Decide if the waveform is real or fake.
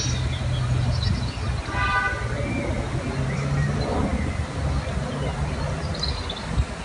real